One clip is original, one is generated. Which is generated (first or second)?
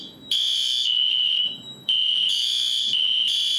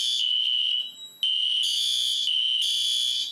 first